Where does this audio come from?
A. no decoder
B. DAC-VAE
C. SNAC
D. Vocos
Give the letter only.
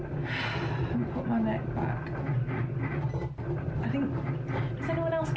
A